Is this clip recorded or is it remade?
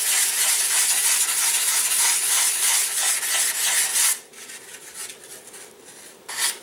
recorded